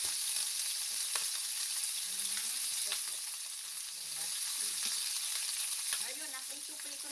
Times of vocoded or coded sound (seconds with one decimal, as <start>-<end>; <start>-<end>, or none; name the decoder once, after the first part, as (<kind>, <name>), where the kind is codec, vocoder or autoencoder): none